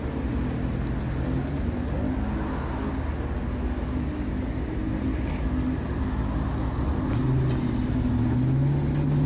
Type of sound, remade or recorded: recorded